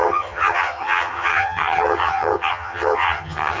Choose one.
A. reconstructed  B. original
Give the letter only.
A